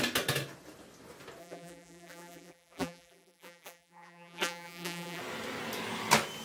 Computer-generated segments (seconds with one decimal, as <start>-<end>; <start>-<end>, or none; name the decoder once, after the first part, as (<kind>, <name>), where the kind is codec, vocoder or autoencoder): 1.4-5.2 (vocoder, BigVGAN v2)